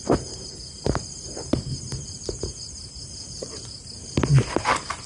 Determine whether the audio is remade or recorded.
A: recorded